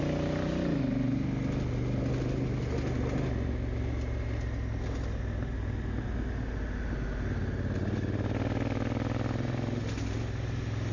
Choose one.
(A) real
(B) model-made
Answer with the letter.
A